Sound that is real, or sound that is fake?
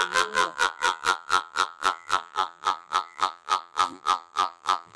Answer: fake